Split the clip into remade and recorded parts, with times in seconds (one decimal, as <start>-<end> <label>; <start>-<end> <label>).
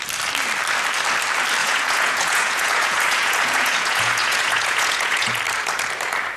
0.0-1.6 recorded; 1.6-5.4 remade; 5.4-6.4 recorded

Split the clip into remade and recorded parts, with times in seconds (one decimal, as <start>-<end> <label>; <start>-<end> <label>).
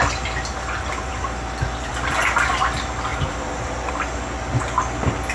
0.0-3.1 recorded; 3.1-3.9 remade; 3.9-5.3 recorded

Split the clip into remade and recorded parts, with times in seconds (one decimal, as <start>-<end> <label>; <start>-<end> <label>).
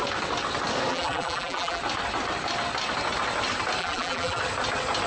0.0-0.9 recorded; 0.9-1.8 remade; 1.8-3.8 recorded; 3.8-4.4 remade; 4.4-5.1 recorded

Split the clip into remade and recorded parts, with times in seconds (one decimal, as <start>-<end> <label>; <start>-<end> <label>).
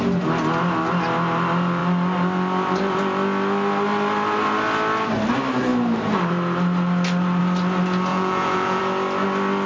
0.0-8.1 recorded; 8.1-8.8 remade; 8.8-9.7 recorded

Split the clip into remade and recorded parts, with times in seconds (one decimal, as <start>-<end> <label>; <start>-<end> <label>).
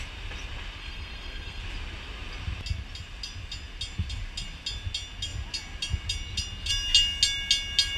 0.0-0.8 recorded; 0.8-1.6 remade; 1.6-8.0 recorded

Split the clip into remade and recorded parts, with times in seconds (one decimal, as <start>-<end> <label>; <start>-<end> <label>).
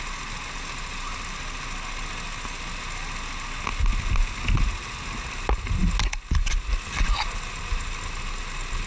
0.0-8.9 recorded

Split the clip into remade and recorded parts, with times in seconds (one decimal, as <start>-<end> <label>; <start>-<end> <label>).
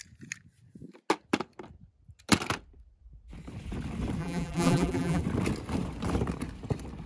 0.0-4.2 recorded; 4.2-5.2 remade; 5.2-7.1 recorded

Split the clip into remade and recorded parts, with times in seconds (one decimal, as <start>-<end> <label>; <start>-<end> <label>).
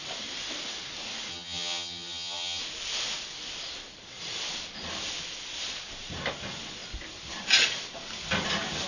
0.0-1.3 recorded; 1.3-2.6 remade; 2.6-8.9 recorded